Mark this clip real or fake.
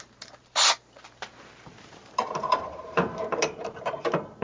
fake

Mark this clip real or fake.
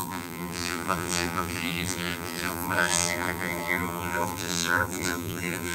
fake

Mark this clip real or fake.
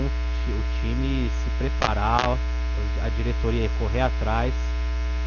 real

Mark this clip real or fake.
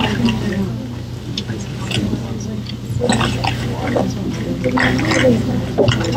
real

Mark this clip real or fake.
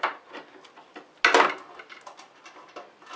real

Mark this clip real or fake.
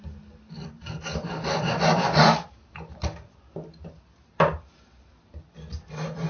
real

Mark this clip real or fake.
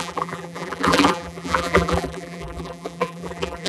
fake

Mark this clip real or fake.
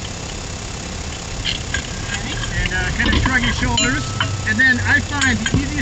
real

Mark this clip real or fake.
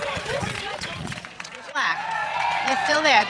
fake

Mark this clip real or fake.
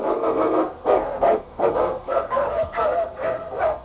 fake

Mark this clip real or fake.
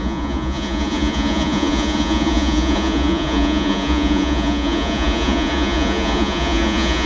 fake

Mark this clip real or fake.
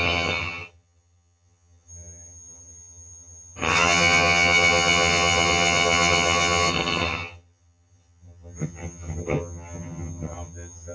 fake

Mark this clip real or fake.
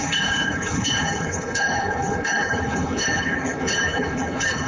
fake